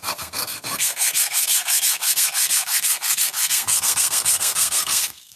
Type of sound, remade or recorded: remade